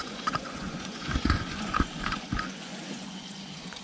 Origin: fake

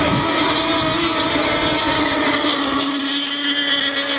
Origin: real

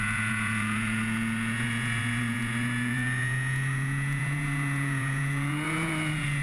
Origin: fake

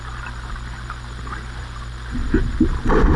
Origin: real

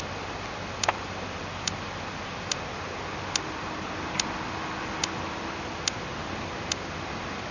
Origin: real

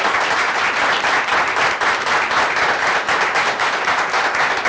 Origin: real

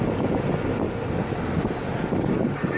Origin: real